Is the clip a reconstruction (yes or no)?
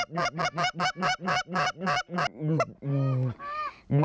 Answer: no